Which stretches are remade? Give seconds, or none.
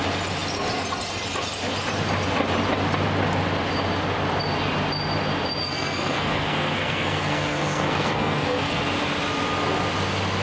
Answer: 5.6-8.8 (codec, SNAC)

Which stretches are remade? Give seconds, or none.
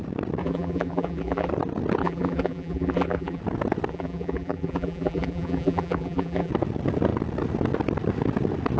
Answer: 0.4-1.5 (vocoder, BigVGAN v2); 2.0-3.4; 3.9-6.5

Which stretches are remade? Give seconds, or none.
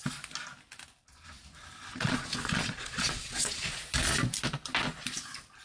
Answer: 1.9-3.8 (vocoder, Vocos)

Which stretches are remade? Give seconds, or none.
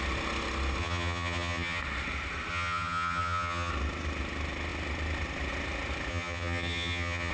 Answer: 0.8-1.8 (vocoder, HiFi-GAN); 2.5-3.7; 6.1-7.3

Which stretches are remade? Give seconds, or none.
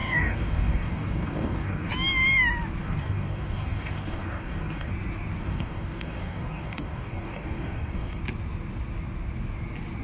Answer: 0.0-1.9 (codec, DAC); 2.8-4.9; 5.4-8.2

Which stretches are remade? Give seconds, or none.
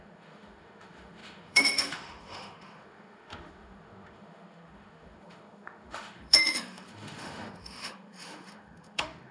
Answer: 0.0-9.3 (autoencoder, DAC-VAE)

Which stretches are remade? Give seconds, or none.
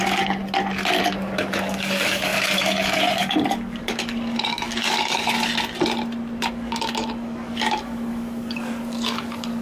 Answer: 0.0-0.4 (codec, DAC); 1.0-5.5; 6.5-9.6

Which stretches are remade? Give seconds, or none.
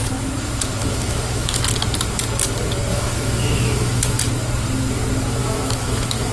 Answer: 0.8-1.6 (autoencoder, DAC-VAE); 2.9-4.2; 5.4-6.3